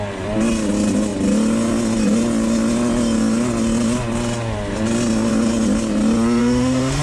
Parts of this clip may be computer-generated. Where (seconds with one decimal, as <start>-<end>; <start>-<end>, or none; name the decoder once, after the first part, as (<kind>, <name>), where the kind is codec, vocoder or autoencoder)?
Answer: 6.4-7.0 (autoencoder, DAC-VAE)